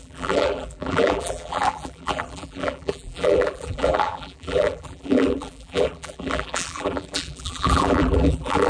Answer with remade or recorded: remade